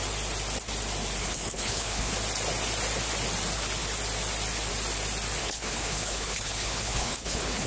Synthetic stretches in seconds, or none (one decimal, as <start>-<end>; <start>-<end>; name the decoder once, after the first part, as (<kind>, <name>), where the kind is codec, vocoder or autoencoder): 1.2-2.1 (codec, HILCodec); 5.4-7.7